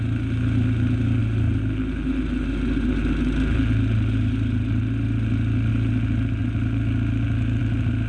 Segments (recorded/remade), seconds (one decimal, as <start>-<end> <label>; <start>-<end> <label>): 0.0-8.1 recorded

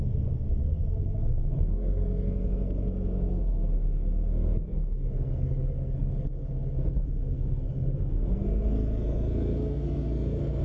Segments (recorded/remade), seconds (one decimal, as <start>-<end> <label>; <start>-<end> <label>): 0.0-10.6 remade

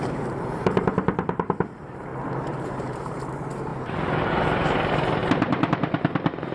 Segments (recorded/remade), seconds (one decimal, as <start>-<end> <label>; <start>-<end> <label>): 0.0-2.1 remade; 2.1-2.7 recorded; 2.7-3.7 remade; 3.7-4.3 recorded; 4.3-6.5 remade

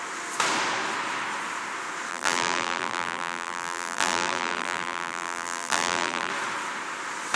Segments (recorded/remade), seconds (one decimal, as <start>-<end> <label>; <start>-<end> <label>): 0.0-2.1 recorded; 2.1-6.3 remade; 6.3-7.4 recorded

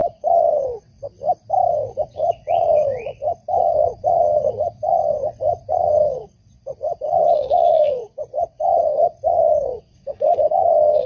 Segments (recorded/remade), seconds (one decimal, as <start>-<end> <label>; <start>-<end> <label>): 0.0-1.0 remade; 1.0-1.7 recorded; 1.7-11.1 remade

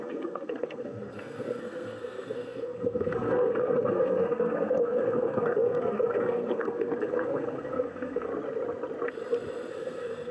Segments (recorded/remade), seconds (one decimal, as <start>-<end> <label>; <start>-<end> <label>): 0.0-8.3 remade; 8.3-9.7 recorded; 9.7-10.3 remade